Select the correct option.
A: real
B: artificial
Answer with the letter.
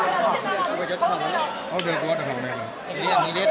A